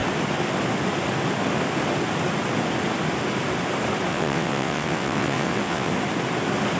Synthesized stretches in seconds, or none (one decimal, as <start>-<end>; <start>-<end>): 4.1-5.9